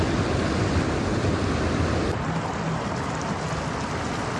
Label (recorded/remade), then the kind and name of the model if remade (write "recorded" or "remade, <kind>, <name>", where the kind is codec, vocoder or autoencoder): recorded